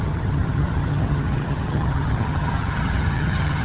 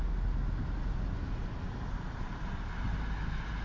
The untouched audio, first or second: second